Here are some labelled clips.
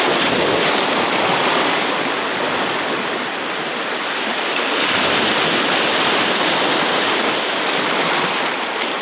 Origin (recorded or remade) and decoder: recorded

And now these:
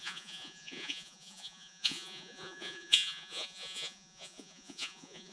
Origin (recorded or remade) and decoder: remade, vocoder, Vocos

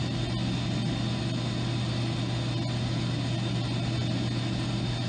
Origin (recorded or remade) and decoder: recorded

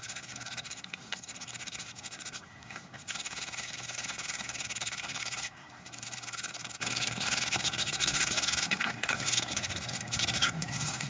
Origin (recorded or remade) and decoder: remade, codec, SNAC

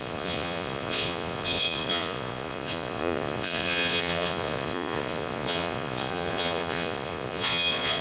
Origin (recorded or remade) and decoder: remade, vocoder, Vocos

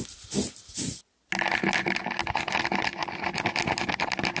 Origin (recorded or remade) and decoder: recorded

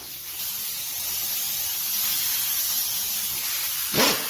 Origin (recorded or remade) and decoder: recorded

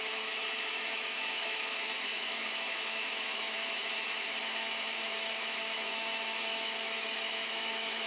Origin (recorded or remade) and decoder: remade, autoencoder, DAC-VAE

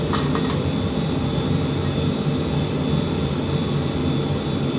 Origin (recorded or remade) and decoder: recorded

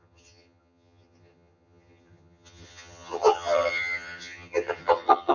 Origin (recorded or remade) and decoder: remade, vocoder, HiFi-GAN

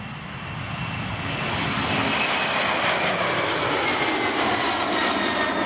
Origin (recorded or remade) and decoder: recorded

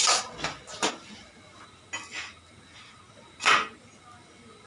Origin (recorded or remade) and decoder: recorded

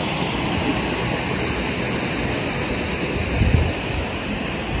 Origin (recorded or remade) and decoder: recorded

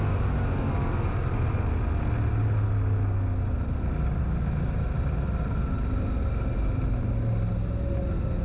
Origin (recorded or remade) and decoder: recorded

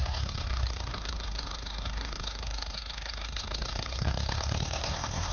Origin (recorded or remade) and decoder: remade, codec, SNAC